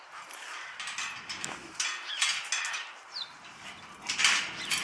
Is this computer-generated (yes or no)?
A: no